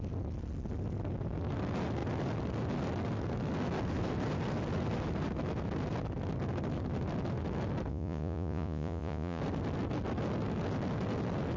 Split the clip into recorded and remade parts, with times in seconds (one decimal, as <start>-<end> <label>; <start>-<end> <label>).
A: 0.0-7.9 recorded; 7.9-9.4 remade; 9.4-11.6 recorded